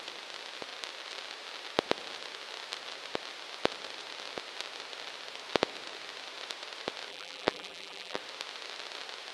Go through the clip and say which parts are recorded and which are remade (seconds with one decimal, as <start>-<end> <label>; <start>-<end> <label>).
0.0-7.1 recorded; 7.1-8.2 remade; 8.2-9.3 recorded